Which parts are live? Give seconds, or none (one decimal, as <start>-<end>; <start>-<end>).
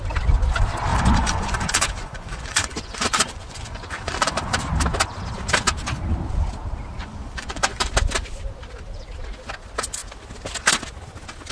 0.0-0.9; 4.6-7.0; 7.9-11.5